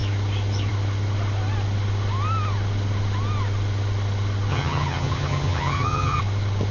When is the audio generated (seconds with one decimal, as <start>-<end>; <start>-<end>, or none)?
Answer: 4.5-6.2